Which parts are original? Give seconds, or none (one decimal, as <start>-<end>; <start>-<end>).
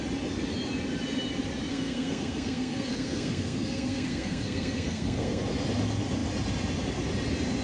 0.0-1.7; 5.4-7.6